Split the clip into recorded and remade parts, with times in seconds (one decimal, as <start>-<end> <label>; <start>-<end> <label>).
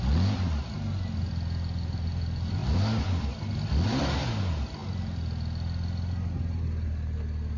0.0-2.6 recorded; 2.6-4.3 remade; 4.3-7.6 recorded